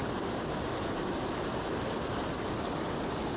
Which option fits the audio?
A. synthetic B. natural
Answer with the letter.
B